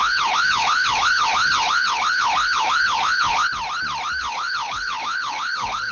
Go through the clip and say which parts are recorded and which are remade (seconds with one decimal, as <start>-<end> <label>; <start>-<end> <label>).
0.0-3.5 remade; 3.5-4.2 recorded; 4.2-5.9 remade